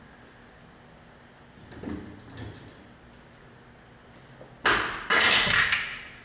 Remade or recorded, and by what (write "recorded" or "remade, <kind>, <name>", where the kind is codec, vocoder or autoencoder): recorded